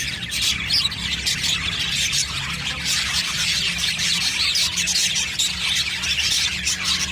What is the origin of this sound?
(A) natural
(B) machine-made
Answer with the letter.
A